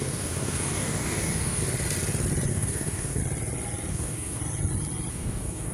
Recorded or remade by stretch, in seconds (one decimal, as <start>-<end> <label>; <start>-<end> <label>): 0.0-1.6 remade; 1.6-2.5 recorded; 2.5-3.2 remade; 3.2-3.9 recorded; 3.9-4.4 remade; 4.4-5.1 recorded; 5.1-5.7 remade